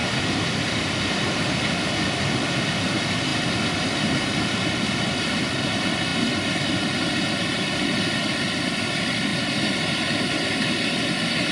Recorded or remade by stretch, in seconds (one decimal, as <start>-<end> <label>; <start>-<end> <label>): 0.0-11.5 recorded